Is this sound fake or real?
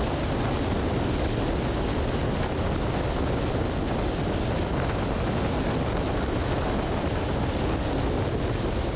real